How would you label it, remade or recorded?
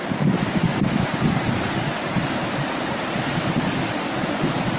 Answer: remade